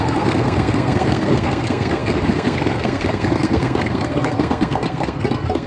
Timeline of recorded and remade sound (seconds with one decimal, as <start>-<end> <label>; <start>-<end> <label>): 0.0-5.7 remade